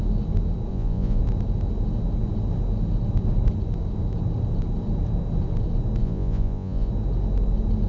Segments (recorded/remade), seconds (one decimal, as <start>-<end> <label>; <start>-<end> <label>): 0.0-0.7 recorded; 0.7-1.2 remade; 1.2-6.0 recorded; 6.0-6.9 remade; 6.9-7.9 recorded